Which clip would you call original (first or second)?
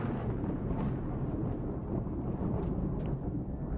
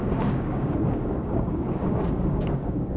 first